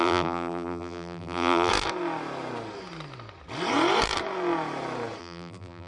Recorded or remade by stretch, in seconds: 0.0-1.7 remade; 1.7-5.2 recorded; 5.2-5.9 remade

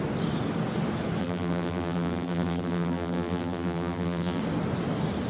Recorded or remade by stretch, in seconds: 0.0-1.2 recorded; 1.2-4.4 remade; 4.4-5.3 recorded

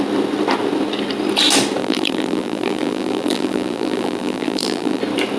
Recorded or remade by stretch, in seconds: 0.0-1.8 recorded; 1.8-5.0 remade; 5.0-5.4 recorded

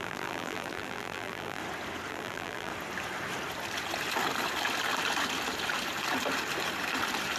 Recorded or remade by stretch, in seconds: 0.0-1.6 remade; 1.6-2.1 recorded; 2.1-2.7 remade; 2.7-7.4 recorded